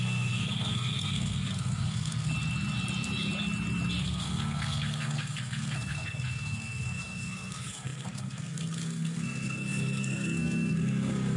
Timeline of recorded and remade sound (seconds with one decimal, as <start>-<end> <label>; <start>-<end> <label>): 0.0-2.3 remade; 2.3-4.0 recorded; 4.0-11.4 remade